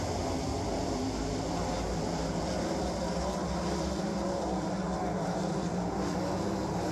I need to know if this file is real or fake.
real